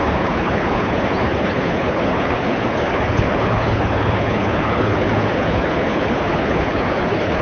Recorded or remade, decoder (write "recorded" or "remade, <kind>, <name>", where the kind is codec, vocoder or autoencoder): remade, codec, HILCodec